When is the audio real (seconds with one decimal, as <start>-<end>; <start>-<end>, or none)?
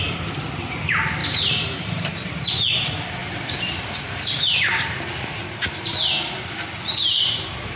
0.0-1.2; 2.3-3.2; 5.9-7.8